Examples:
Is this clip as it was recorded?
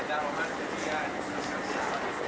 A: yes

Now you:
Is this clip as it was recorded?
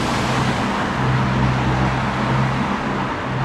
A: yes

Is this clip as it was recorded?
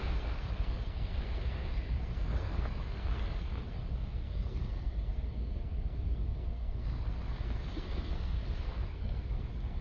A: no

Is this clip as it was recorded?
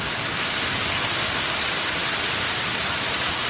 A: yes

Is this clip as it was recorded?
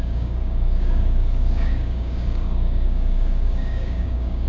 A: no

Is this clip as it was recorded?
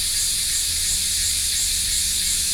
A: no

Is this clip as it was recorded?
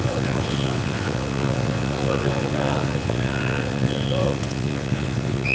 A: no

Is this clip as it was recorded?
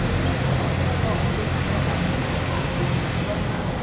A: yes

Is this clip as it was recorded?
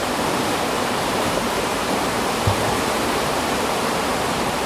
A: no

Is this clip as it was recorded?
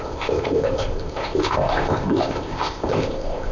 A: no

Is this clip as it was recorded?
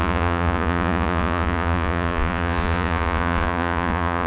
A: no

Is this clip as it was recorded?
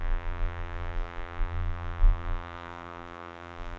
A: no